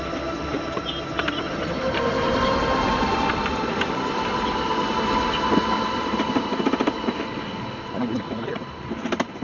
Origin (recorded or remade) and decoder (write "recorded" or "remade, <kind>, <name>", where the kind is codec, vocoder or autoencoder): recorded